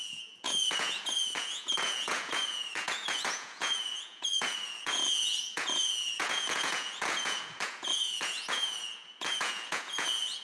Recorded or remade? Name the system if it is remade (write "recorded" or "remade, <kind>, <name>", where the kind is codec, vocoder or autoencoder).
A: remade, vocoder, Vocos